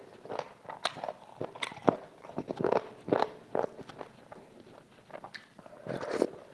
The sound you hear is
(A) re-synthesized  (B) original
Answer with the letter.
B